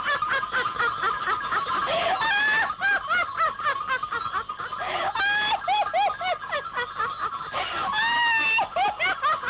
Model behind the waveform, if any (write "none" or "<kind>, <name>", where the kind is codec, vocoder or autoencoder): none